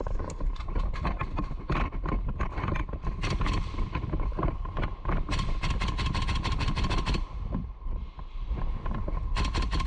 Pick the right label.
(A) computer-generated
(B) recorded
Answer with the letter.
B